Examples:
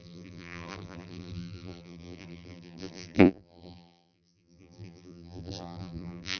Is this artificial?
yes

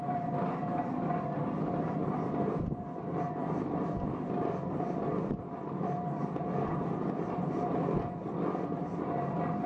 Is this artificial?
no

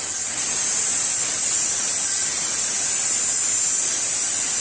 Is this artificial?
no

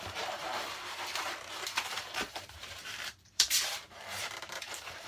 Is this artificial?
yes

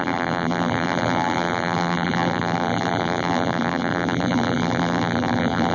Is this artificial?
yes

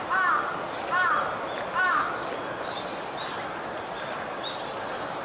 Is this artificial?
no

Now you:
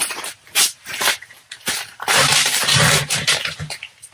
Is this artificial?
yes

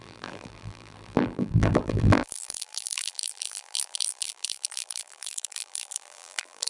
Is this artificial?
yes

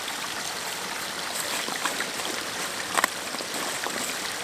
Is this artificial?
yes